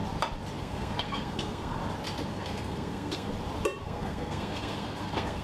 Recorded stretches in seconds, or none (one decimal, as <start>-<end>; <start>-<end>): 0.0-0.6; 1.8-2.3; 3.3-3.8